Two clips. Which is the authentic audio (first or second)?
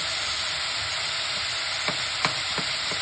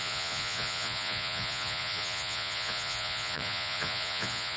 first